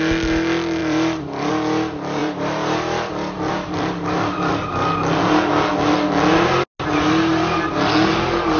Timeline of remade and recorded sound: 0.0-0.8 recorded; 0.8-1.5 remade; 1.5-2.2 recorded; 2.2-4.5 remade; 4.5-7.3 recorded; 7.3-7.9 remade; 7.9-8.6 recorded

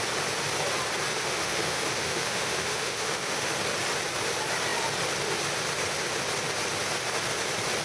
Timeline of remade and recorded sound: 0.0-1.1 recorded; 1.1-3.5 remade; 3.5-7.8 recorded